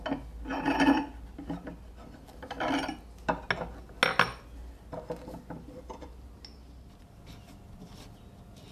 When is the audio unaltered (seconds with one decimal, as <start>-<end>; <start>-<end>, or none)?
0.0-8.7